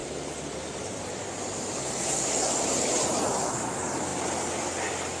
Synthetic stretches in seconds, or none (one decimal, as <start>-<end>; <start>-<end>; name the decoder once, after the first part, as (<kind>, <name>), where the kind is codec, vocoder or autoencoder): 0.0-3.1 (vocoder, BigVGAN v2)